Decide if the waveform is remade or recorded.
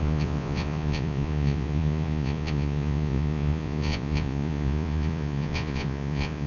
remade